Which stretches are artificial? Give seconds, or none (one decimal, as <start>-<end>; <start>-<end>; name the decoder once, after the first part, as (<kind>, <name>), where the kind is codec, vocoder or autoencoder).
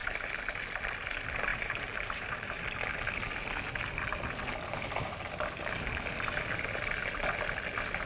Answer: 1.5-2.5 (vocoder, BigVGAN v2)